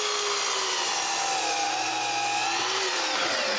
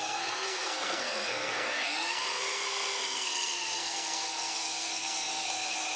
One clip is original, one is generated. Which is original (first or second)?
first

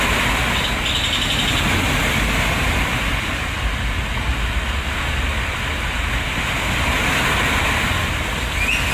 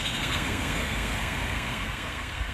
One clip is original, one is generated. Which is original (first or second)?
first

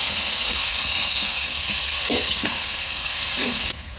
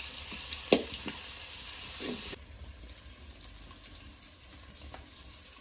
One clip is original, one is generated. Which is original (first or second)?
second